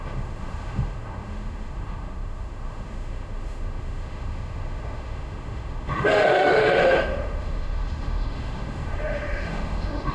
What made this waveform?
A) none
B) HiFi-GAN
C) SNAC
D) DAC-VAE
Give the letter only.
D